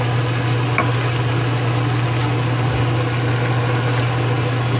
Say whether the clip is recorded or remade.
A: recorded